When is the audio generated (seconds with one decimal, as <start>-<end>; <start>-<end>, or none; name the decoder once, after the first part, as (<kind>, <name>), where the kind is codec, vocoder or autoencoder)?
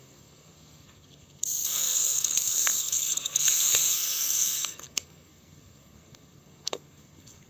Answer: 0.0-7.5 (codec, SNAC)